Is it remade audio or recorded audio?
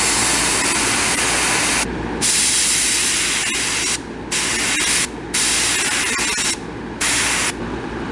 recorded